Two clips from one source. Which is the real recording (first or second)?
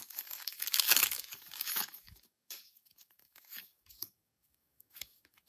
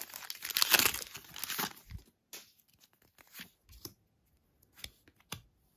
second